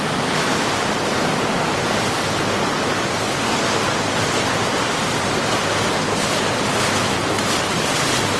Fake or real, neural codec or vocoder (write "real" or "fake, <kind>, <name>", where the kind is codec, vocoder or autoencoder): real